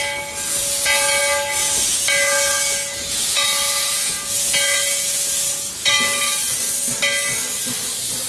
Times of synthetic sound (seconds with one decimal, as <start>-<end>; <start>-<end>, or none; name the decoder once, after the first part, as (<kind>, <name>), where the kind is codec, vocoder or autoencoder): 0.6-1.2 (vocoder, Vocos); 1.6-5.9